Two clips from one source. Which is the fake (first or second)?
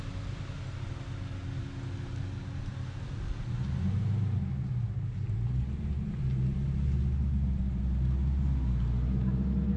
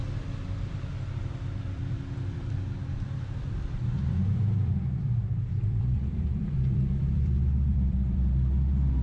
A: second